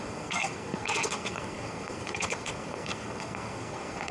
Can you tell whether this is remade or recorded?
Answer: remade